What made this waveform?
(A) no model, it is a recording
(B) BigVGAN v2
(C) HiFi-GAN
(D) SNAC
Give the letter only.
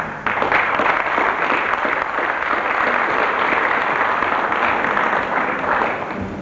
A